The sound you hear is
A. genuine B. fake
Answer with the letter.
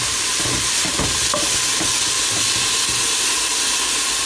A